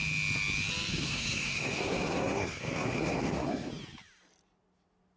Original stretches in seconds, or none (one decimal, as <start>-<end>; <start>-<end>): 0.0-0.9; 3.7-5.2